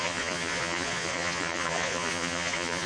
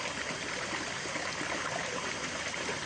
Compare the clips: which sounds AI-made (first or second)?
first